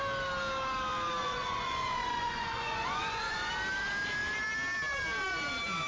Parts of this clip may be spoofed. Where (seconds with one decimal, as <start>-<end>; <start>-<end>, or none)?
1.2-3.5